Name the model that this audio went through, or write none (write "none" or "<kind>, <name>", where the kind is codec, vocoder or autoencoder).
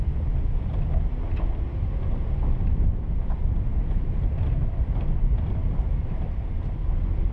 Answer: none